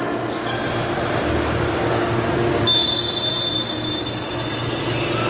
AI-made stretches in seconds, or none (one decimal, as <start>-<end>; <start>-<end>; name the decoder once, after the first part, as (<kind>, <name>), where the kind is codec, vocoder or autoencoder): none